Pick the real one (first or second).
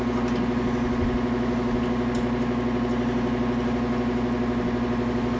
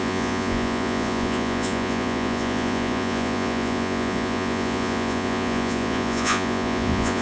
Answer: first